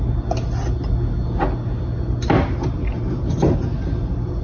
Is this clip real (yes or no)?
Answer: yes